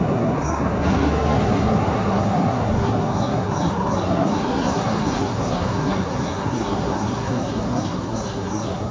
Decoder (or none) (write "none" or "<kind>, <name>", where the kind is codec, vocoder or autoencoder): codec, SNAC